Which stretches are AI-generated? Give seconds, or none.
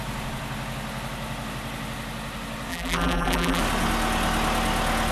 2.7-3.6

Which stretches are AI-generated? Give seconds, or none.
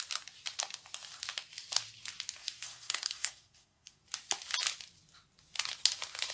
2.4-4.0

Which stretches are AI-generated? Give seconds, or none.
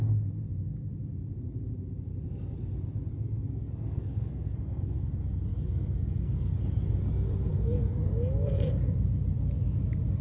3.1-5.1; 5.5-6.6; 7.5-8.1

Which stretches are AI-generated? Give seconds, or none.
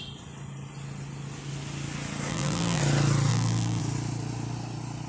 2.3-2.8; 3.3-3.8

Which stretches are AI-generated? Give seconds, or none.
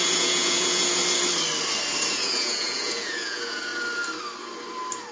0.0-1.0; 2.1-3.7